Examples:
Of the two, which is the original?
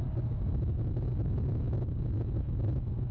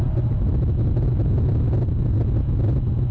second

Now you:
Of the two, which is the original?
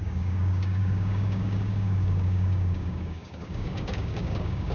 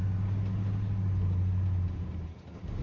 second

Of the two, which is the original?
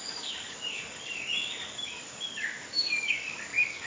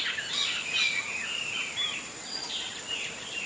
second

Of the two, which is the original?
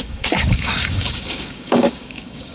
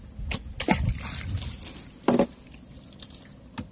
second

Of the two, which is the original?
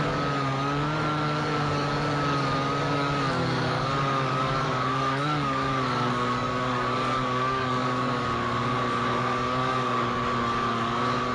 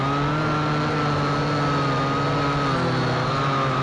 second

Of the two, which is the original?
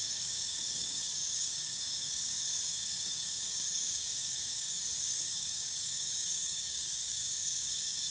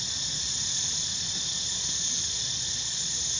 second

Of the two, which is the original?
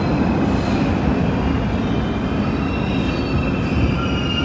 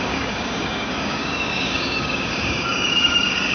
first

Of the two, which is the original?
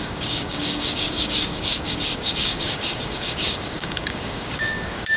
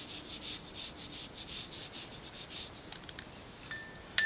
second